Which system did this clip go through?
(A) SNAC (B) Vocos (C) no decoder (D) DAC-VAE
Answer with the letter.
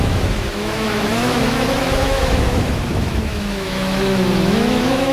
D